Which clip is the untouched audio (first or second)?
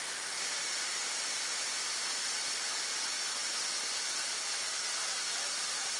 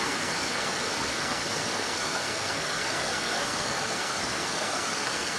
first